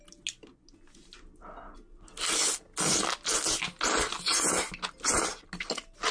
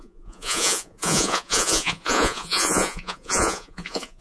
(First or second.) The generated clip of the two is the second